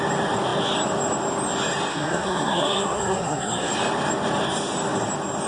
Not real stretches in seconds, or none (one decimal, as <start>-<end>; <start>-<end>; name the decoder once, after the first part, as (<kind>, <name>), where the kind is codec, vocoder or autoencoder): 1.9-3.7 (codec, SNAC)